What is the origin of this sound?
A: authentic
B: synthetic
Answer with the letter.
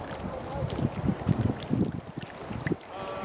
A